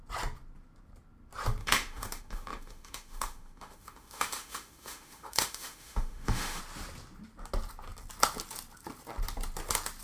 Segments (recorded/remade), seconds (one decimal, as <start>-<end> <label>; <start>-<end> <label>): 0.0-1.6 recorded; 1.6-6.6 remade; 6.6-10.0 recorded